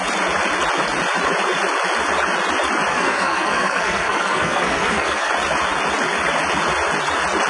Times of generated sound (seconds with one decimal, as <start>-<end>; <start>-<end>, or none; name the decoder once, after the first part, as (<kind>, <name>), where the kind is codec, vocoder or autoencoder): 2.9-5.3 (codec, SNAC)